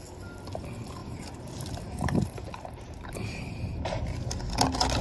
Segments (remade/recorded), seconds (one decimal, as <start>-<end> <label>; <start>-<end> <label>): 0.0-1.0 recorded; 1.0-4.0 remade; 4.0-5.0 recorded